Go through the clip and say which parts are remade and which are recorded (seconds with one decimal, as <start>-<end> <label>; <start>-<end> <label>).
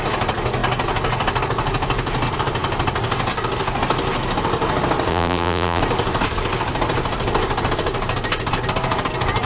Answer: 0.0-5.1 recorded; 5.1-5.8 remade; 5.8-9.5 recorded